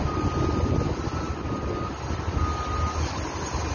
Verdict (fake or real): real